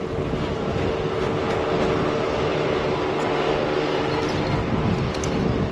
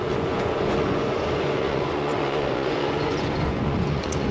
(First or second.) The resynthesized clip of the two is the second